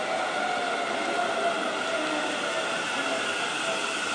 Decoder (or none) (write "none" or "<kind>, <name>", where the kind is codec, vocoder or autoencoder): none